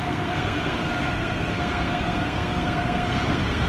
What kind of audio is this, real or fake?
fake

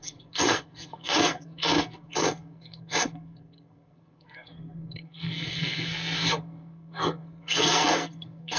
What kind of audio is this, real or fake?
fake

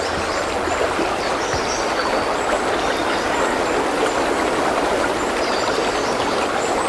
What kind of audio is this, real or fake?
real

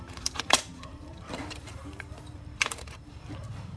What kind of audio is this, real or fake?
fake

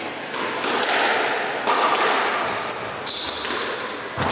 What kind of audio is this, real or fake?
real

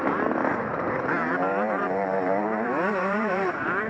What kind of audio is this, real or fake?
fake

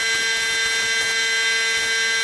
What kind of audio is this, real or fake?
real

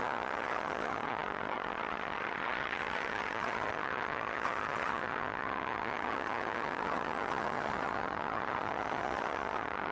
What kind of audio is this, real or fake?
fake